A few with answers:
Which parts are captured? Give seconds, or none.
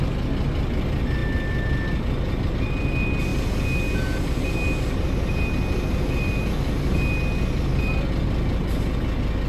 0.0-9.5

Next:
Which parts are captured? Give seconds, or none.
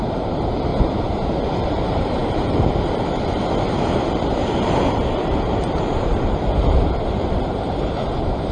0.7-1.5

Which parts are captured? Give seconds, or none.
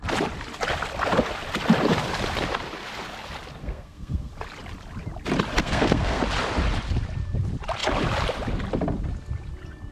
0.0-3.6; 4.3-5.6; 6.2-9.9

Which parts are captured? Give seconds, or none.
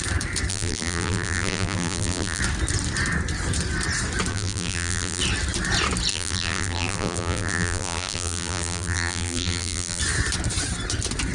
0.0-0.5; 2.4-4.3; 5.2-6.1; 10.0-11.3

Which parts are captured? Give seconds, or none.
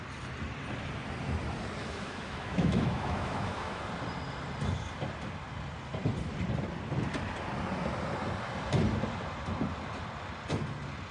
0.0-1.8; 3.8-11.1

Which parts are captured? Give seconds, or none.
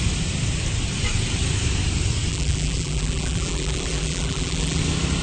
0.0-2.3; 4.8-5.2